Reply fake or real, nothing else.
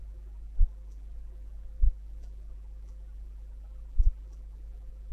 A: fake